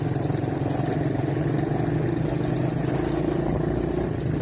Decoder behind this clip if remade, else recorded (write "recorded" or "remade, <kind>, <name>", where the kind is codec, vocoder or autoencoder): recorded